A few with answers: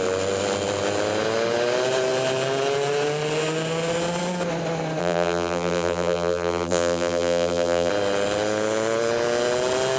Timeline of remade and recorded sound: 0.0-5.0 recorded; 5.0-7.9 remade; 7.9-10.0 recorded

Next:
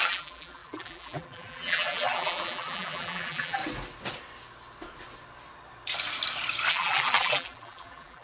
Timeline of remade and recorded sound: 0.0-3.6 remade; 3.6-6.7 recorded; 6.7-8.2 remade

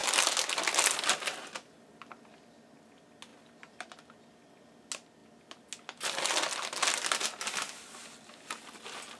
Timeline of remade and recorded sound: 0.0-3.3 recorded; 3.3-3.9 remade; 3.9-9.2 recorded

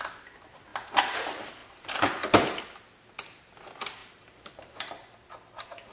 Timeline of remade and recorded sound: 0.0-0.7 recorded; 0.7-1.2 remade; 1.2-1.6 recorded; 1.6-2.6 remade; 2.6-4.0 recorded; 4.0-4.9 remade; 4.9-5.9 recorded

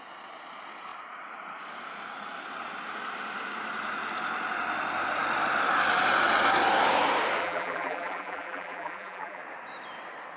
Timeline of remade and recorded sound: 0.0-7.4 recorded; 7.4-9.4 remade; 9.4-10.4 recorded

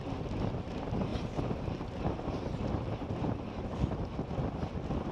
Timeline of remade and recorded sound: 0.0-1.1 recorded; 1.1-4.2 remade; 4.2-5.1 recorded

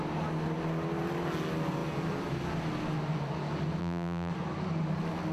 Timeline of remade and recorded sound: 0.0-3.8 recorded; 3.8-4.3 remade; 4.3-5.3 recorded

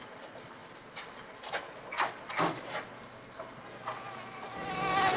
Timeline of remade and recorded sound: 0.0-5.2 recorded